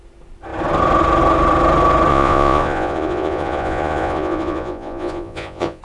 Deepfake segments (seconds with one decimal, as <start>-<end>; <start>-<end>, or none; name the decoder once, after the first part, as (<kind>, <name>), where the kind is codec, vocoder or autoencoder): 2.1-5.8 (vocoder, Vocos)